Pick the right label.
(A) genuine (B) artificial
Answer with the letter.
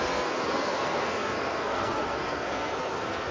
B